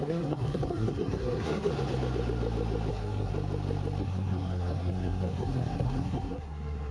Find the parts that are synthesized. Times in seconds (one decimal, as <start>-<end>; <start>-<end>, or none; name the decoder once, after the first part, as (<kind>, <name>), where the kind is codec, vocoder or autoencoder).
0.0-1.7 (codec, SNAC); 2.9-3.3; 4.0-6.9

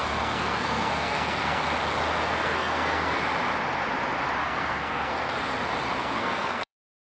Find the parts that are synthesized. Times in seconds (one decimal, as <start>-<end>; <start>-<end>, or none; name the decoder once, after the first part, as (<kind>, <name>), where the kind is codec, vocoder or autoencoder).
0.0-1.6 (codec, SNAC); 2.2-3.2; 4.4-5.3; 6.0-7.0